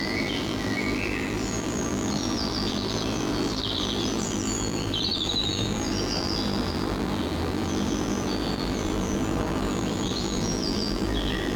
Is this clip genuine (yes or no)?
no